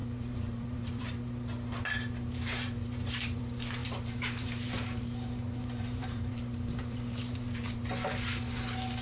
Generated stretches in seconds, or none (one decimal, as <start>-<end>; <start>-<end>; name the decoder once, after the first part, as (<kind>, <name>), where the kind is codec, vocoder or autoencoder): 0.0-3.4 (vocoder, BigVGAN v2); 3.8-7.8

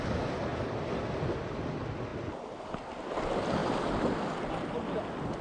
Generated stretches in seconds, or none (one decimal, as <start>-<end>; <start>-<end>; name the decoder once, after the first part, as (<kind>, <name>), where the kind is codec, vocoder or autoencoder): 0.5-1.0 (vocoder, BigVGAN v2); 2.1-2.9; 3.6-4.4

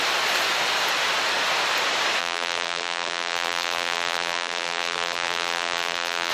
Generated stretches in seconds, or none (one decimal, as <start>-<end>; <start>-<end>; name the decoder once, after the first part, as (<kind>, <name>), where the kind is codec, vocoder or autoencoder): 2.2-6.3 (vocoder, BigVGAN v2)